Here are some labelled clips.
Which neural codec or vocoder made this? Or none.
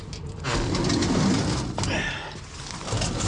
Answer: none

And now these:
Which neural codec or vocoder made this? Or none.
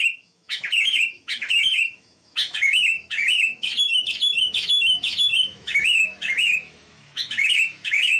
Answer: autoencoder, DAC-VAE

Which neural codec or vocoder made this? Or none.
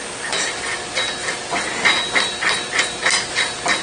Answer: none